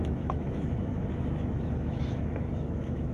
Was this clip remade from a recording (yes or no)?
yes